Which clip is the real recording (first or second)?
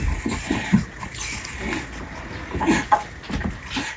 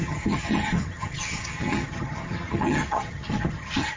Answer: first